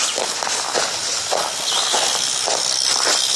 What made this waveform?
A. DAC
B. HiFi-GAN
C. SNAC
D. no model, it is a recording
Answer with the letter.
D